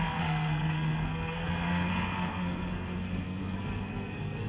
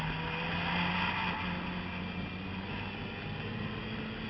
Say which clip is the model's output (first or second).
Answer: first